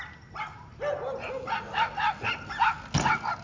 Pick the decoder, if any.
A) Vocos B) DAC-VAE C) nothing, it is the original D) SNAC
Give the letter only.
C